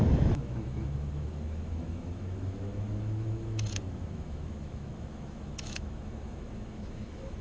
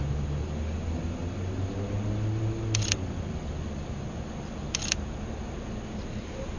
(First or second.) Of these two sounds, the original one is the second